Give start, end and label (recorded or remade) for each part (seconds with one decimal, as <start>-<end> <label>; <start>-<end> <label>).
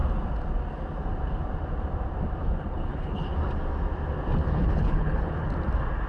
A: 0.0-2.4 recorded; 2.4-3.3 remade; 3.3-4.4 recorded; 4.4-5.5 remade; 5.5-6.1 recorded